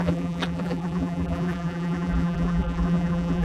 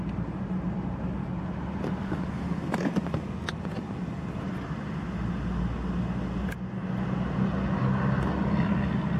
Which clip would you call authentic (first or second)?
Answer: second